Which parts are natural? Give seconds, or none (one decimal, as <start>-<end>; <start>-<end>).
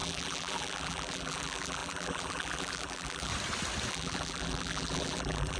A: 3.3-3.9